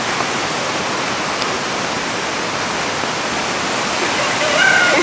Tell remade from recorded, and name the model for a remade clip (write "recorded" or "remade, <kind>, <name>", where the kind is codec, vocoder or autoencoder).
recorded